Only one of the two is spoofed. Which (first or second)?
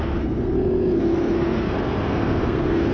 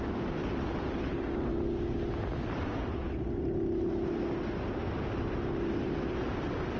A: first